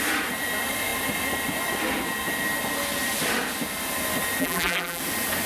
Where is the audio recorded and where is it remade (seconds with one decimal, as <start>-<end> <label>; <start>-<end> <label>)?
0.0-4.4 recorded; 4.4-5.0 remade; 5.0-5.5 recorded